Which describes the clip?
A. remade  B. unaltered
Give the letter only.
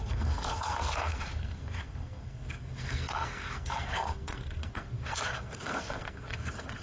A